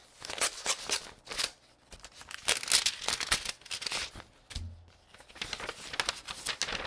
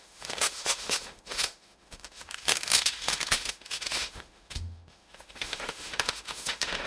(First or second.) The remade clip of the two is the second